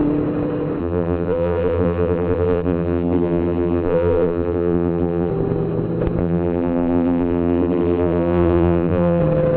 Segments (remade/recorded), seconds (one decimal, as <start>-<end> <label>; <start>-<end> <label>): 0.0-0.8 recorded; 0.8-5.3 remade; 5.3-6.2 recorded; 6.2-9.2 remade; 9.2-9.6 recorded